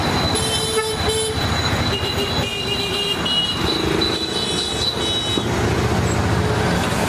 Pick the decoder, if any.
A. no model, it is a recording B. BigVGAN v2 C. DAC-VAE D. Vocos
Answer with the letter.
A